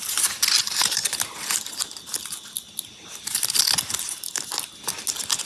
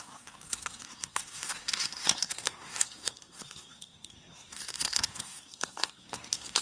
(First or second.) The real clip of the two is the first